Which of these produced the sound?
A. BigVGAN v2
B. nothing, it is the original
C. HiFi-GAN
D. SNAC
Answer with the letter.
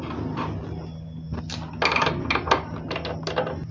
B